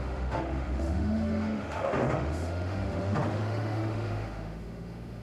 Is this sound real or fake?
fake